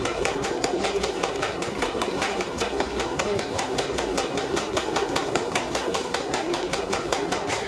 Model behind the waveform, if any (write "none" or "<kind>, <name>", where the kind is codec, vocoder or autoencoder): codec, SNAC